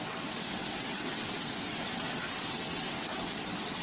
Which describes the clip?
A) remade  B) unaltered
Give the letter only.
A